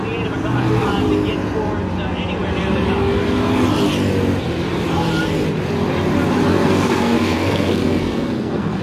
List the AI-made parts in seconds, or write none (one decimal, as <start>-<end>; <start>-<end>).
6.5-8.8